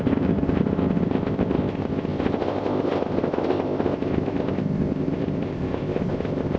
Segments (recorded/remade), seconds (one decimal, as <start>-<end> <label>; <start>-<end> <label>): 0.0-6.6 remade